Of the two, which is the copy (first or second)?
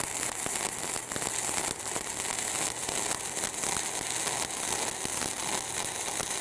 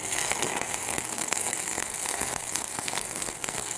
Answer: second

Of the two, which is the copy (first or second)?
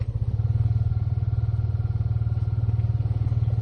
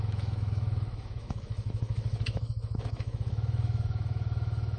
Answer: second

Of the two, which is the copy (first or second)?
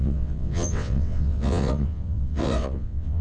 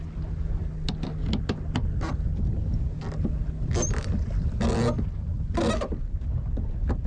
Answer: first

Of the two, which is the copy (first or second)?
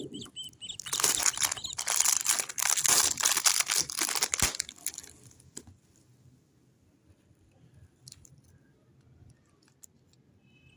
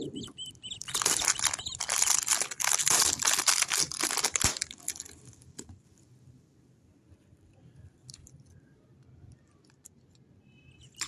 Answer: second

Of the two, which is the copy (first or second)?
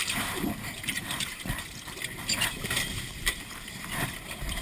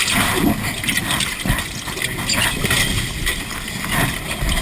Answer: first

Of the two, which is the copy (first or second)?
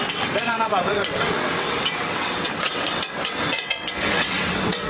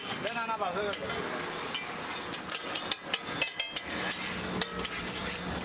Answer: first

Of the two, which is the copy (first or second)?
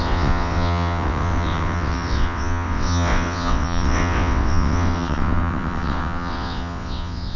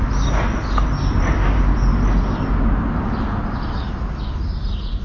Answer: first